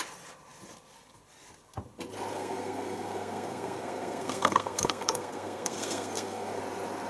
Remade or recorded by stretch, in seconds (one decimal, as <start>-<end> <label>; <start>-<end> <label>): 0.0-2.3 recorded; 2.3-6.6 remade; 6.6-7.1 recorded